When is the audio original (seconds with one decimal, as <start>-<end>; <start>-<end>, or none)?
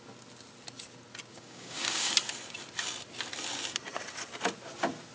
0.0-1.3; 2.1-5.1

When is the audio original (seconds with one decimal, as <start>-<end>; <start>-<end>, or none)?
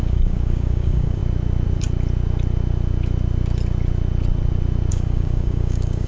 1.2-4.9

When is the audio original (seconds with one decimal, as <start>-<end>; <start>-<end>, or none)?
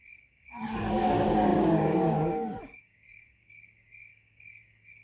none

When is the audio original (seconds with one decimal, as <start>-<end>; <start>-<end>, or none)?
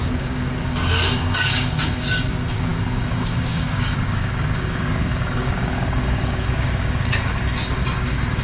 none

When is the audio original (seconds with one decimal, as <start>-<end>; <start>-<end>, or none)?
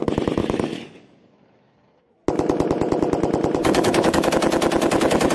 0.0-0.4; 2.1-3.6; 4.3-5.3